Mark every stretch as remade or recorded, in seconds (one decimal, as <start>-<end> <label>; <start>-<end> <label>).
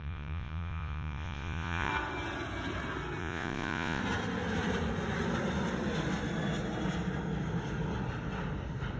0.0-1.9 remade; 1.9-3.2 recorded; 3.2-4.0 remade; 4.0-9.0 recorded